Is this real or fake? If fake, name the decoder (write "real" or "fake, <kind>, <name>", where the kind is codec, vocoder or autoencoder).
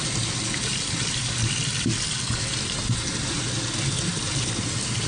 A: real